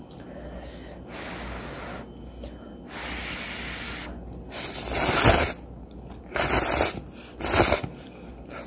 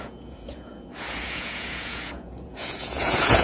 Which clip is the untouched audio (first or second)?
first